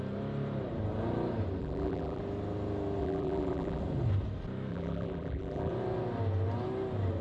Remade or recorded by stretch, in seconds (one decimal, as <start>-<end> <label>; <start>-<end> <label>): 0.0-1.6 recorded; 1.6-2.2 remade; 2.2-3.0 recorded; 3.0-3.8 remade; 3.8-4.7 recorded; 4.7-5.7 remade; 5.7-7.2 recorded